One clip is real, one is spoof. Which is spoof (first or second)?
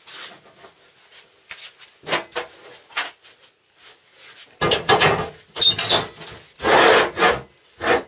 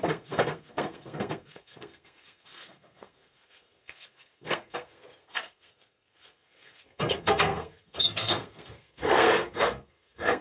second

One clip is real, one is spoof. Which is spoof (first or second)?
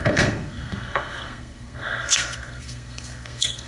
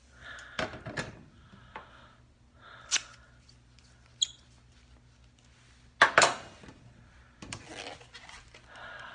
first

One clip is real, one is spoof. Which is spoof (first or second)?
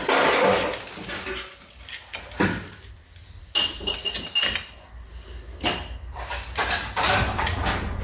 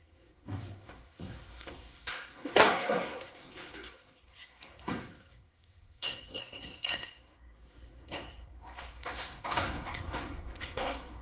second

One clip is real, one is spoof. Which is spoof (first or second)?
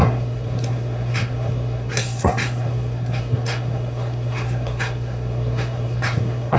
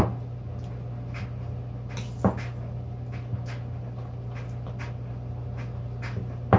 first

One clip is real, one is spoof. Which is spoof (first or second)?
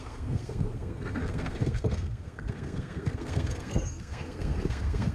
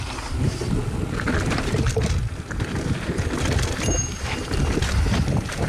first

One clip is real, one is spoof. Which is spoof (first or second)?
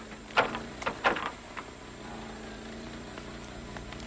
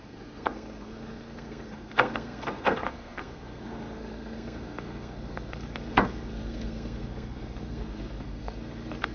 second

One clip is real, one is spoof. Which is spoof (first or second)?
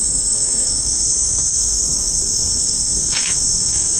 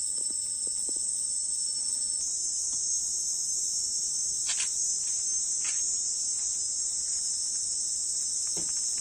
first